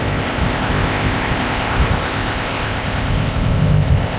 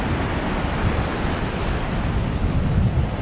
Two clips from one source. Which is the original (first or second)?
second